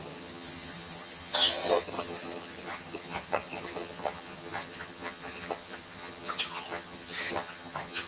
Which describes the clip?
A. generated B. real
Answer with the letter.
A